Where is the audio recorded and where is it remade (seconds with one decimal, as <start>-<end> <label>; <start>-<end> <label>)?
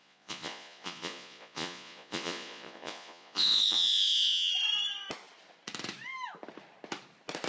0.0-4.5 remade; 4.5-7.5 recorded